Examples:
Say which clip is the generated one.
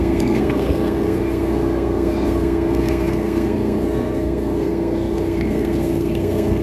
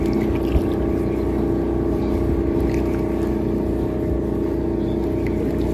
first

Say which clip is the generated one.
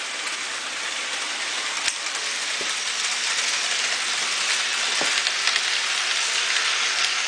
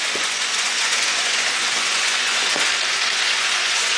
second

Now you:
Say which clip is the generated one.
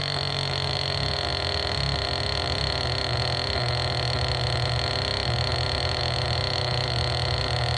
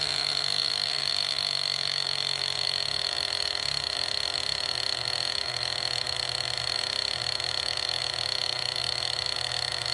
second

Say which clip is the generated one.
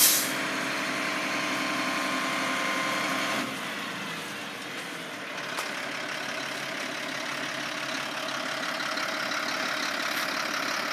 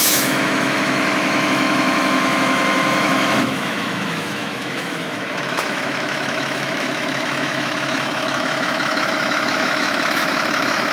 second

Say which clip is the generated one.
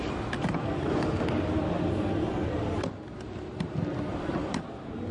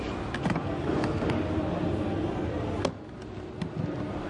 first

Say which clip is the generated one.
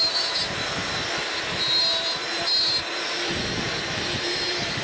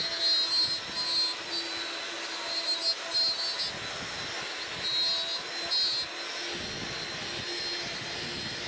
first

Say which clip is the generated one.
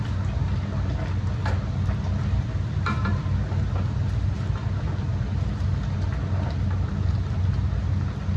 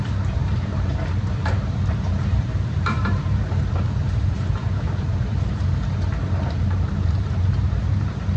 second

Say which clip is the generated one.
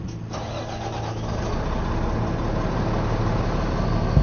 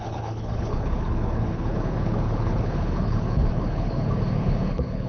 second